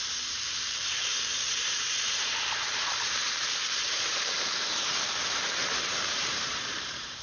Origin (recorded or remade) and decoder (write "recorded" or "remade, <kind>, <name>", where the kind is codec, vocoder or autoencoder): remade, vocoder, BigVGAN v2